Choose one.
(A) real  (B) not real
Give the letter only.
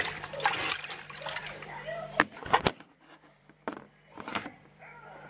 B